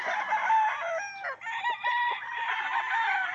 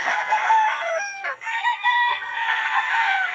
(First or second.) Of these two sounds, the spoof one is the second